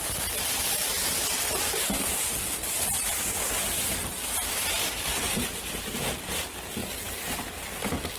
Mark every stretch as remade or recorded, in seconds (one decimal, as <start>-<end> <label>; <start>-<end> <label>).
0.0-8.2 recorded